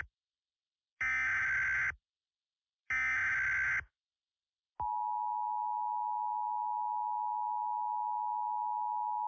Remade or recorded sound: recorded